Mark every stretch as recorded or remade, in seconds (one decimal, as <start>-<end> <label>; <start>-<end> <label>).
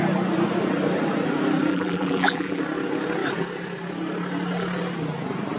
0.0-1.7 recorded; 1.7-2.6 remade; 2.6-5.6 recorded